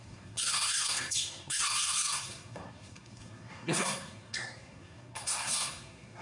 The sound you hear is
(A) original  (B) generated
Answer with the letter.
B